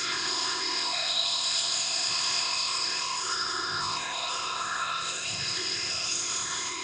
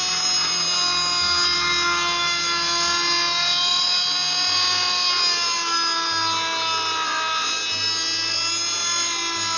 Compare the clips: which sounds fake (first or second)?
first